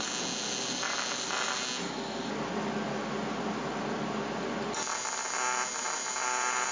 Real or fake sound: real